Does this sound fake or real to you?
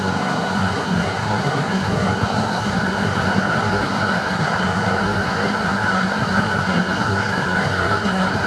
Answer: fake